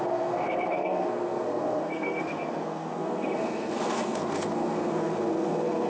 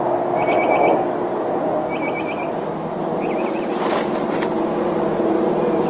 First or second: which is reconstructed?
first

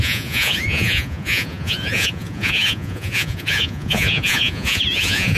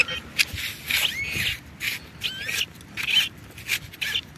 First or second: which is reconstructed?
first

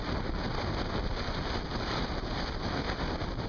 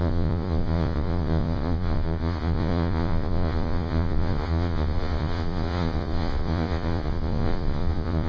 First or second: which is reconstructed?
second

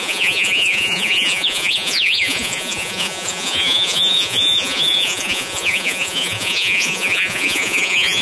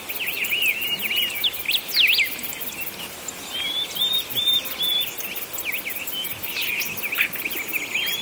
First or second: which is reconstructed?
first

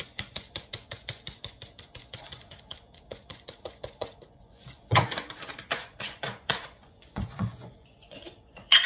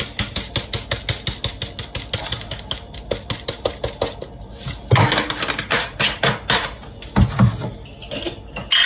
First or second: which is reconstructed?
first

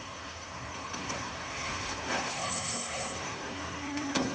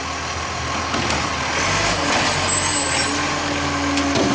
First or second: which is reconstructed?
first